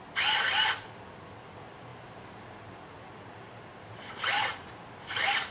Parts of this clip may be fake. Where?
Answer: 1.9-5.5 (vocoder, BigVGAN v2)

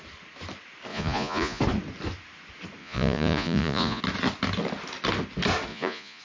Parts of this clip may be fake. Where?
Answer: 0.9-1.6 (vocoder, Vocos); 2.8-4.0; 5.7-6.2

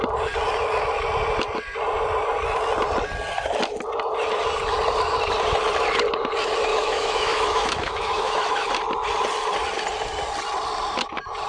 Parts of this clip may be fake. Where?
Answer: 6.7-8.7 (autoencoder, DAC-VAE)

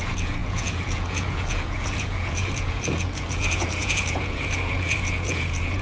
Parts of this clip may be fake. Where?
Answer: 0.0-5.8 (vocoder, Vocos)